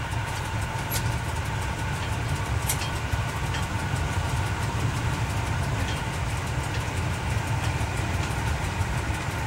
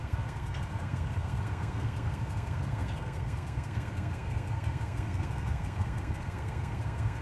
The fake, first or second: second